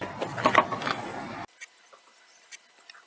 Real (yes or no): yes